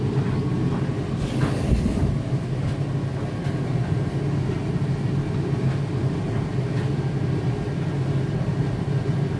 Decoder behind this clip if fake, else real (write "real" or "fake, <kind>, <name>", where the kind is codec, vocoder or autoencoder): real